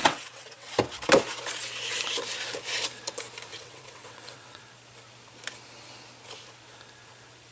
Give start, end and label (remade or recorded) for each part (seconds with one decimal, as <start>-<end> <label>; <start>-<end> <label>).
0.0-0.7 remade; 0.7-3.5 recorded; 3.5-4.6 remade; 4.6-7.5 recorded